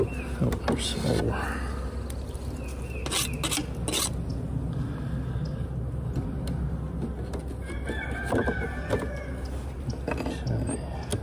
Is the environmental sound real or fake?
real